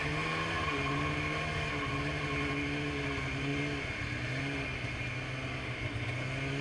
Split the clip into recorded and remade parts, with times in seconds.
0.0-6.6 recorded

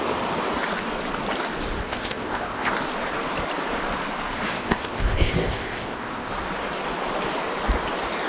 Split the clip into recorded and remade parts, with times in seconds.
0.0-1.8 recorded; 1.8-2.7 remade; 2.7-4.5 recorded; 4.5-6.3 remade; 6.3-8.3 recorded

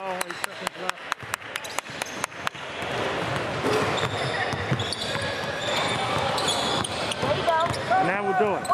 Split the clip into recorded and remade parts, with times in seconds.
0.0-8.7 recorded

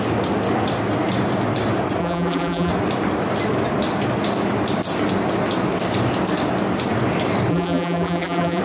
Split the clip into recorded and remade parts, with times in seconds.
0.0-2.0 recorded; 2.0-2.7 remade; 2.7-7.5 recorded; 7.5-8.6 remade

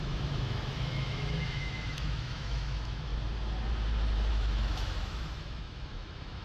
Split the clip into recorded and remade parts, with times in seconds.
0.0-3.1 remade; 3.1-4.3 recorded; 4.3-6.4 remade